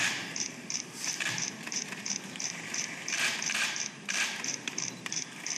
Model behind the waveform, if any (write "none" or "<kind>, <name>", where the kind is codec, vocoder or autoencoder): vocoder, BigVGAN v2